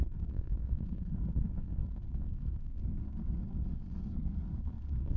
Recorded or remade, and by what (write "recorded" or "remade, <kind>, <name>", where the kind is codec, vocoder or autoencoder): remade, codec, SNAC